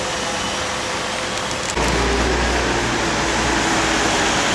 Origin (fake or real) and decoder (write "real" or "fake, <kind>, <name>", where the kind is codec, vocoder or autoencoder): real